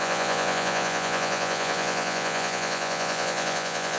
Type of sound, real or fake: fake